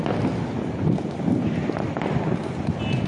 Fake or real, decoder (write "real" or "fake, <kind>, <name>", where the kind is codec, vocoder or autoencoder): real